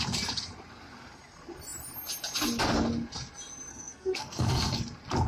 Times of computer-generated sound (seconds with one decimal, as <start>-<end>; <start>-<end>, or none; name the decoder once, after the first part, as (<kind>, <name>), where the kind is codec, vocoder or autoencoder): 3.7-4.8 (codec, SNAC)